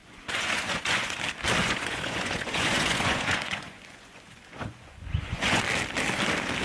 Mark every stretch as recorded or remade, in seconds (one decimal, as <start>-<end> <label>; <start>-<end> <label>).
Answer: 0.0-1.2 remade; 1.2-1.6 recorded; 1.6-5.6 remade; 5.6-6.6 recorded